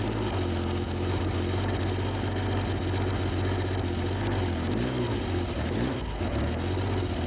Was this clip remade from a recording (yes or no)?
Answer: no